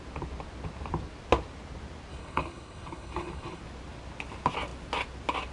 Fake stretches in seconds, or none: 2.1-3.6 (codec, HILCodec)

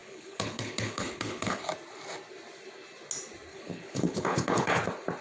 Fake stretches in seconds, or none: 0.0-1.6 (codec, HILCodec); 3.5-4.8

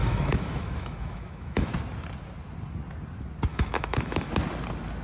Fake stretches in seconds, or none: 0.0-1.7 (autoencoder, DAC-VAE); 3.5-4.3

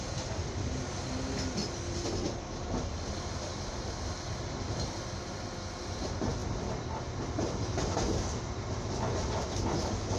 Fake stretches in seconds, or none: none

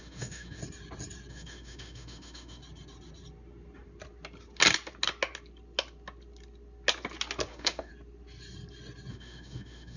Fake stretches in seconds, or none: 0.0-0.6 (autoencoder, DAC-VAE); 1.3-2.6; 7.5-7.9; 9.1-10.0